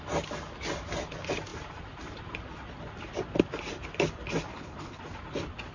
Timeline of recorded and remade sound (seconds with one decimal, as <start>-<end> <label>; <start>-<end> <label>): 0.0-4.5 recorded; 4.5-5.0 remade; 5.0-5.7 recorded